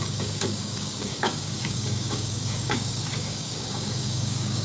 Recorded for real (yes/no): no